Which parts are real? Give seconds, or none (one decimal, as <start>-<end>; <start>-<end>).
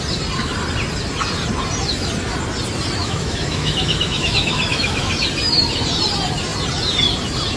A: 0.0-3.0; 5.1-7.6